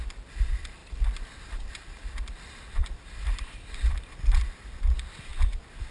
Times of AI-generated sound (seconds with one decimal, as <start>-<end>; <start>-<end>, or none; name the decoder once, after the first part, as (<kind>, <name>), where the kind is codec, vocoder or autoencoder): none